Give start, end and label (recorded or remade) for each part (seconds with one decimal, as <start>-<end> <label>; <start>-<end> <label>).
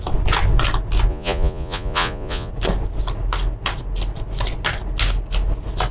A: 0.0-1.1 recorded; 1.1-2.5 remade; 2.5-5.9 recorded